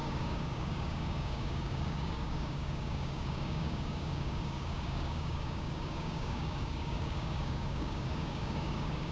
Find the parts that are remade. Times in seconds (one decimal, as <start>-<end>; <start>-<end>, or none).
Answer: 0.0-9.1